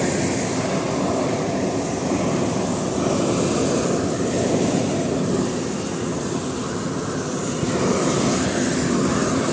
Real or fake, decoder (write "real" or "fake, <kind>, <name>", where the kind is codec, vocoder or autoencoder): real